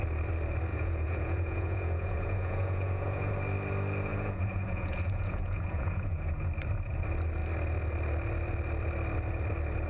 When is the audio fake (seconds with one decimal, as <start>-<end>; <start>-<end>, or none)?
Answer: 0.7-3.3; 4.1-6.5